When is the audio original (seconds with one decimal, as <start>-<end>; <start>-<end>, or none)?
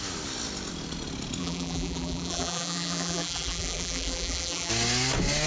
0.0-1.4; 4.7-5.5